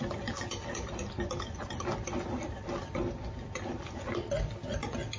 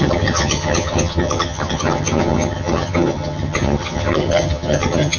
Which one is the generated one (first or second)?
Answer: second